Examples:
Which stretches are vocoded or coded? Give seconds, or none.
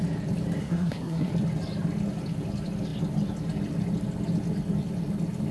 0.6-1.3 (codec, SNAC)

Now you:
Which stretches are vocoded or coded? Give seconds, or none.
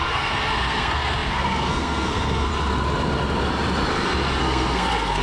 0.0-2.5 (codec, SNAC); 4.4-5.2